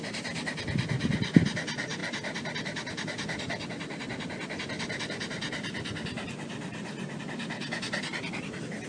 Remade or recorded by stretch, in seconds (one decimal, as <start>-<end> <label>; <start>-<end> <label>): 0.0-8.9 recorded